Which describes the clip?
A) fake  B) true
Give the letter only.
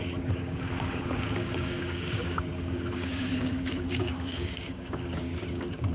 A